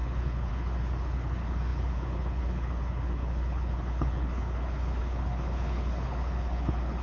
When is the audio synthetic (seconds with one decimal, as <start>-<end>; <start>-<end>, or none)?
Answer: 0.0-7.0